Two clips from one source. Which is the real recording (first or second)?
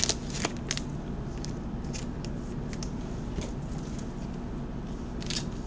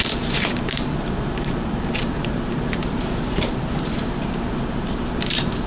first